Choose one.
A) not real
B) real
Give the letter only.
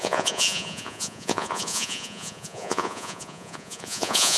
A